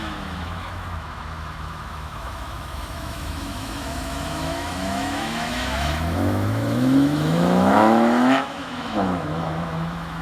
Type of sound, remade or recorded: remade